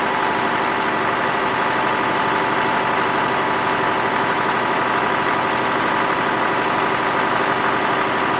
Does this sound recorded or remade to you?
recorded